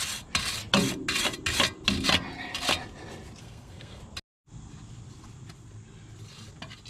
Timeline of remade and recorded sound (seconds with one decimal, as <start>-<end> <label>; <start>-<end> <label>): 0.0-3.4 recorded; 3.4-4.0 remade; 4.0-6.9 recorded